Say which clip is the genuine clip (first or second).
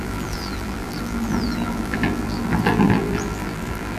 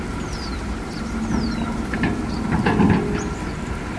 second